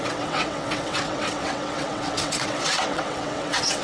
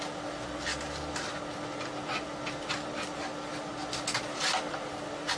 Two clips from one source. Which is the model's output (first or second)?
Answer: first